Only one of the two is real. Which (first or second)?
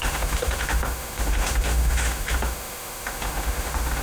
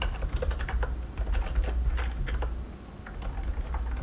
second